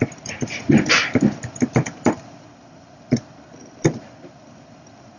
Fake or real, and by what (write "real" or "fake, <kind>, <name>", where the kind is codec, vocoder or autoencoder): fake, vocoder, BigVGAN v2